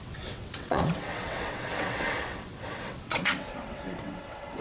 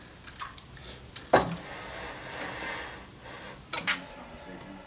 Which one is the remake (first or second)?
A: first